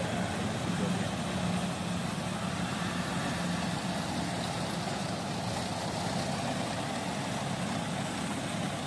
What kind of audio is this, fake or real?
real